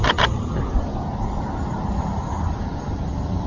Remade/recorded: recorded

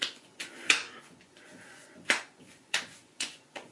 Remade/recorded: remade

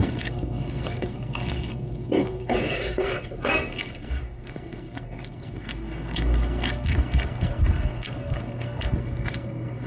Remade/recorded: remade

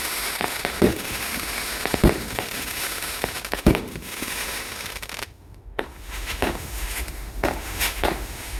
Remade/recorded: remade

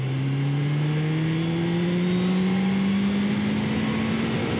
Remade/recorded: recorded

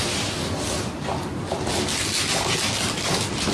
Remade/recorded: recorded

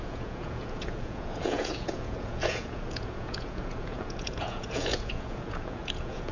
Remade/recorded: remade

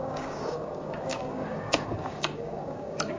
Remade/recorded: remade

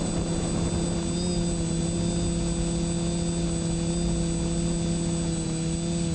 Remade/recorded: recorded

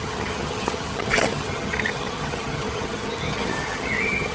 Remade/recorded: remade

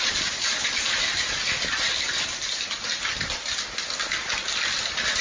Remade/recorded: recorded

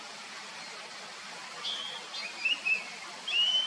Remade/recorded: recorded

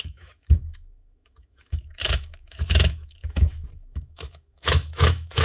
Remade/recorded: remade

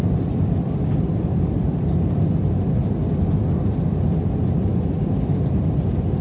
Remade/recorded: recorded